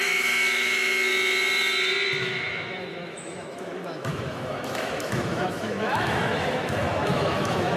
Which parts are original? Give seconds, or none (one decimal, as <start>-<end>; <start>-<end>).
1.1-2.2